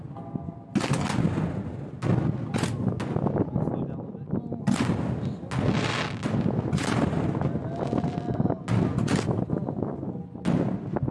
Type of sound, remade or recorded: recorded